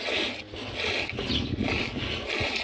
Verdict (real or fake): real